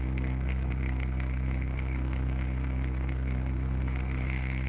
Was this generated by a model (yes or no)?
yes